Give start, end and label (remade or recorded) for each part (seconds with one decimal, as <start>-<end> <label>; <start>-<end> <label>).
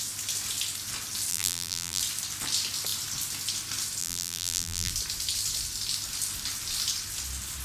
0.0-1.3 recorded; 1.3-2.0 remade; 2.0-4.0 recorded; 4.0-4.9 remade; 4.9-7.6 recorded